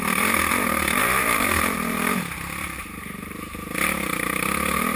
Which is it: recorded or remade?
remade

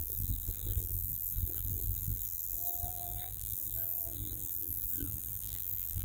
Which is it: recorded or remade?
remade